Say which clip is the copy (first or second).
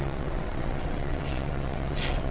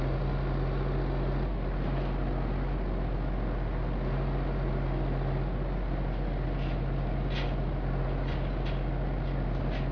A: first